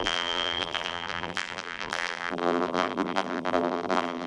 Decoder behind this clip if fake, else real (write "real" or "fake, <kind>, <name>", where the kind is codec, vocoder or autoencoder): fake, vocoder, BigVGAN v2